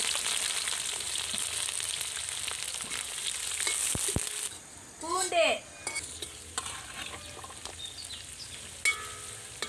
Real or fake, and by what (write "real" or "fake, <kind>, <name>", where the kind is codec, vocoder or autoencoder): real